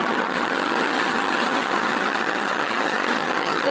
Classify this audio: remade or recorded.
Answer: remade